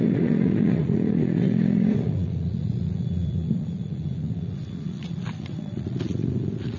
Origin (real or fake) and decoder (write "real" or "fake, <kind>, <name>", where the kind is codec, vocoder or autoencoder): fake, vocoder, Vocos